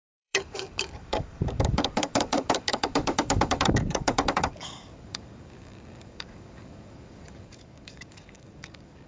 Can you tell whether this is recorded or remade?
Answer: remade